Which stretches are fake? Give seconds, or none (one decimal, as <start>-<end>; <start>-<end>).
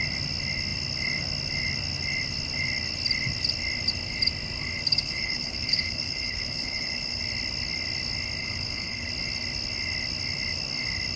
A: 4.9-7.2; 8.4-9.1